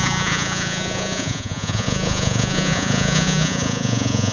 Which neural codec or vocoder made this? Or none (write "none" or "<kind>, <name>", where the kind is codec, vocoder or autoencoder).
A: vocoder, Vocos